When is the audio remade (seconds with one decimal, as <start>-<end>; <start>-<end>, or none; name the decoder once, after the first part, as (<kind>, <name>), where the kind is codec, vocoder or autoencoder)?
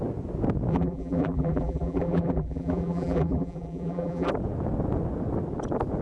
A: 0.7-4.3 (vocoder, BigVGAN v2)